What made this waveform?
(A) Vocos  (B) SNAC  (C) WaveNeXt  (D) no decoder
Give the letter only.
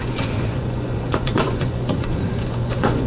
A